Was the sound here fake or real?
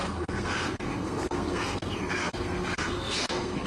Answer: fake